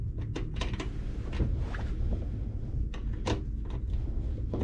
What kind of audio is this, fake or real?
real